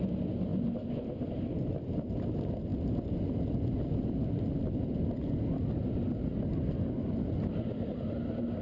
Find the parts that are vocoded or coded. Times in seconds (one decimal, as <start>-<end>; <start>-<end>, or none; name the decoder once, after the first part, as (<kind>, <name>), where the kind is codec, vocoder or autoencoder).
none